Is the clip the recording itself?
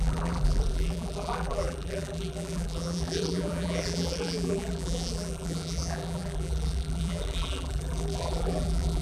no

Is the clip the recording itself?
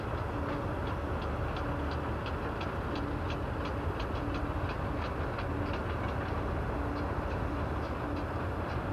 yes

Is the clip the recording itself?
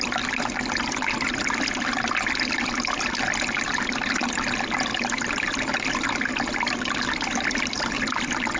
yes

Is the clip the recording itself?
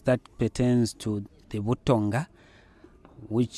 yes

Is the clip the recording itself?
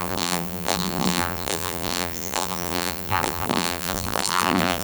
no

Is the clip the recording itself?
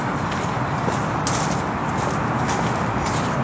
yes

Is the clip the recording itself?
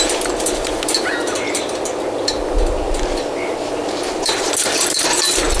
no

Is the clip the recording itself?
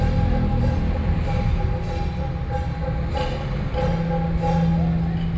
yes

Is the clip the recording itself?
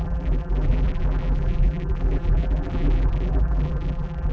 no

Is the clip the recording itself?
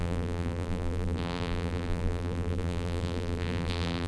no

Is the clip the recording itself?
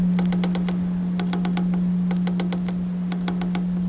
yes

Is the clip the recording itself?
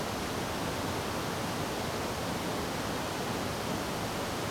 yes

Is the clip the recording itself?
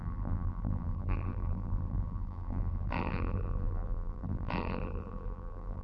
no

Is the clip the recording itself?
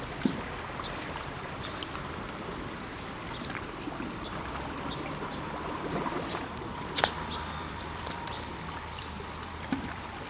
no